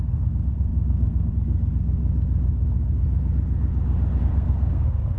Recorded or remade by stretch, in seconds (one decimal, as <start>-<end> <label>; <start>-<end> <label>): 0.0-2.0 remade; 2.0-4.2 recorded; 4.2-5.2 remade

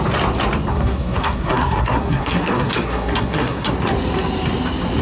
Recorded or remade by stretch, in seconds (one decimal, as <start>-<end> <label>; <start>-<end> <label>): 0.0-0.7 recorded; 0.7-3.7 remade; 3.7-5.0 recorded

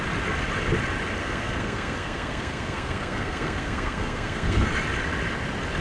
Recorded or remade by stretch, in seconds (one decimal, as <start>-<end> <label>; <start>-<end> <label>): 0.0-1.2 recorded; 1.2-4.7 remade; 4.7-5.8 recorded

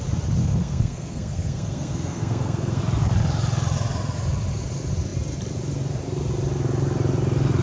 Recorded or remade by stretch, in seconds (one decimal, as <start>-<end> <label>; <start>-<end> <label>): 0.0-0.4 recorded; 0.4-2.8 remade; 2.8-7.6 recorded

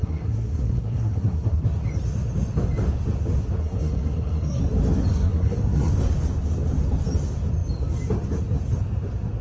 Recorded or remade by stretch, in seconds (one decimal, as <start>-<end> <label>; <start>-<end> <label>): 0.0-1.6 remade; 1.6-3.6 recorded; 3.6-4.6 remade; 4.6-5.1 recorded; 5.1-5.9 remade; 5.9-9.4 recorded

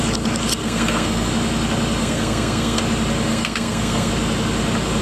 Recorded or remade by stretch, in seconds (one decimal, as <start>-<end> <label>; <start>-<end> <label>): 0.0-0.6 recorded; 0.6-1.3 remade; 1.3-2.0 recorded; 2.0-2.8 remade; 2.8-3.3 recorded; 3.3-4.1 remade; 4.1-5.0 recorded

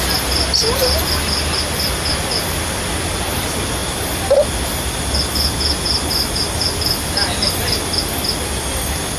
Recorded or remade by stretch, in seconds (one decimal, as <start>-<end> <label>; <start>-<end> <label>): 0.0-9.2 recorded

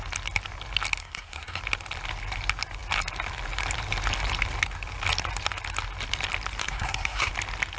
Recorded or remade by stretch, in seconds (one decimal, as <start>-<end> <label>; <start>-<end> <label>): 0.0-1.0 recorded; 1.0-1.6 remade; 1.6-6.6 recorded; 6.6-7.3 remade; 7.3-7.8 recorded